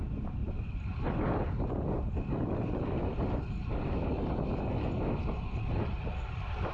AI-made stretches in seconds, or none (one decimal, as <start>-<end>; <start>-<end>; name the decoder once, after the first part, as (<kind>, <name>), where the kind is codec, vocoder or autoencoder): none